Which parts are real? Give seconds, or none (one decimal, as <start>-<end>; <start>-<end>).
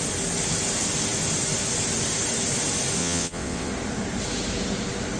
0.0-3.0; 3.7-5.2